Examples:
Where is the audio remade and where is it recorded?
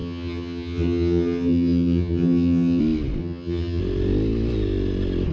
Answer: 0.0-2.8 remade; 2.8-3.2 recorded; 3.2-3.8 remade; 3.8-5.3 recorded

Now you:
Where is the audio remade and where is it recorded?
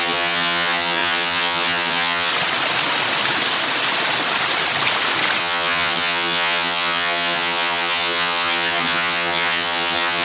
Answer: 0.0-2.3 remade; 2.3-5.4 recorded; 5.4-10.2 remade